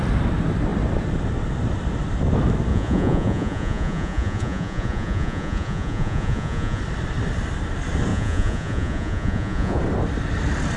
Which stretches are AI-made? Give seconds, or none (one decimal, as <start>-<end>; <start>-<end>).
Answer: 2.7-6.8; 8.1-9.8